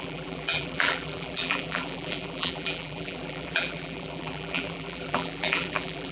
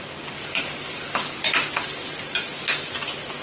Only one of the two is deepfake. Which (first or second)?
first